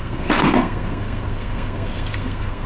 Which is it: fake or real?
fake